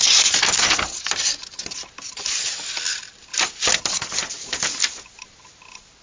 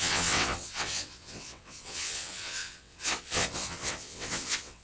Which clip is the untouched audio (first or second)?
first